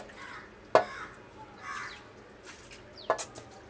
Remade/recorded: recorded